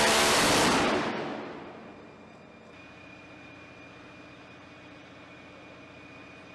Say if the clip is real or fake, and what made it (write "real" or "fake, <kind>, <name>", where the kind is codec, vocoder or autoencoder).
real